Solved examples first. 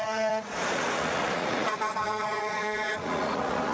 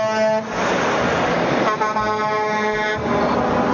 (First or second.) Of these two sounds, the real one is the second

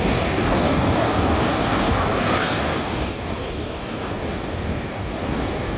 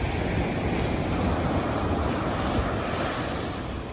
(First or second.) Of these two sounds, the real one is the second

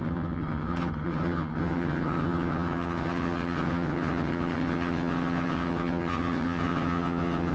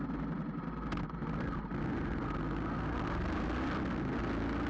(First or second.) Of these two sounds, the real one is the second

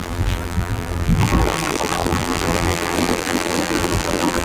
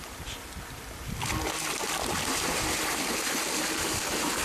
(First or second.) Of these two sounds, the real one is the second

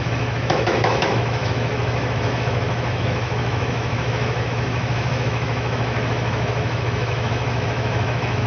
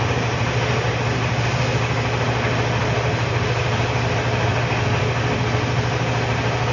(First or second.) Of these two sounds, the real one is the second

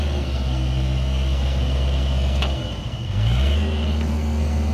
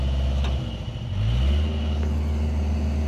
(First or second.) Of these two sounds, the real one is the second